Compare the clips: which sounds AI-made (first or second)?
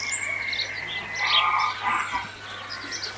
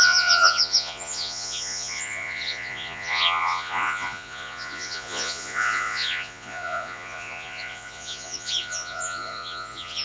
second